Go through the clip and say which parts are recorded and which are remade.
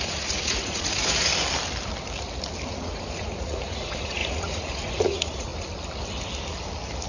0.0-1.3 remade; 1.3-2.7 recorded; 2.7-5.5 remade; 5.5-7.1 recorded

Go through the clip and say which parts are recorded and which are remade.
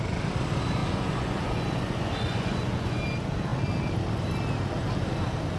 0.0-0.8 recorded; 0.8-3.0 remade; 3.0-5.6 recorded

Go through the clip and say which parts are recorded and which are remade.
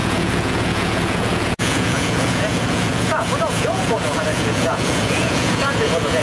0.0-6.2 remade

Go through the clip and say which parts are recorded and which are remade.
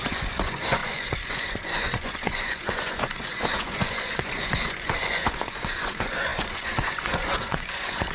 0.0-8.1 remade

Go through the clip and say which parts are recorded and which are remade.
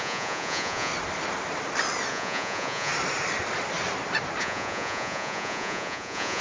0.0-0.9 remade; 0.9-2.1 recorded; 2.1-2.9 remade; 2.9-4.4 recorded; 4.4-6.4 remade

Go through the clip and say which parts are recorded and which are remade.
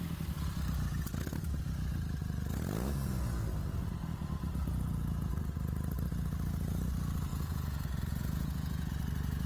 0.0-4.7 recorded; 4.7-5.5 remade; 5.5-7.3 recorded; 7.3-8.9 remade; 8.9-9.5 recorded